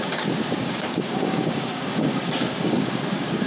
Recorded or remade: remade